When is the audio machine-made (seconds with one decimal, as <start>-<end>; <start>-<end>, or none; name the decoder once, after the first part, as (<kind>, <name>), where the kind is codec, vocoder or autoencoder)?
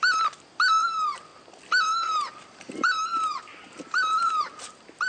none